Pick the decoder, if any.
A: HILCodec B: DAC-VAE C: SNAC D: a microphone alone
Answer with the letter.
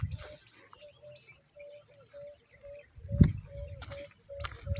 D